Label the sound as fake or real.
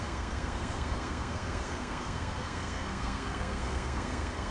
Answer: fake